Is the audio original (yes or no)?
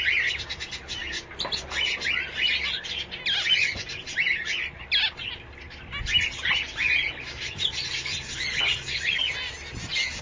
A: yes